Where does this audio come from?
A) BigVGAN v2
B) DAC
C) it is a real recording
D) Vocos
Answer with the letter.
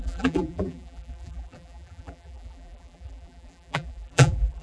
A